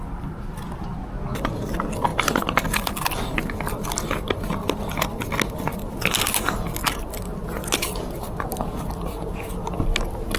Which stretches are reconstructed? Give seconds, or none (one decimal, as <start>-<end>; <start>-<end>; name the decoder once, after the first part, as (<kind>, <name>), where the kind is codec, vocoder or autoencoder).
8.2-8.9 (vocoder, BigVGAN v2)